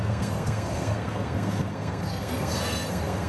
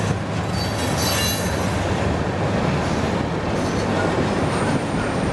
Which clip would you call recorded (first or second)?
second